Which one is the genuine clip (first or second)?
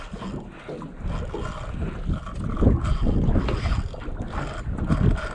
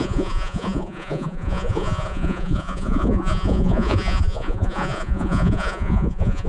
first